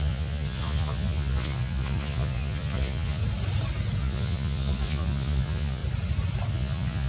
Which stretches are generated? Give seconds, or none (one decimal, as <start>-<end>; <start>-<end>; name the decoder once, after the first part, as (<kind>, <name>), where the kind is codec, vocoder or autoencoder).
0.0-3.2 (vocoder, Vocos); 4.0-5.8; 6.5-7.1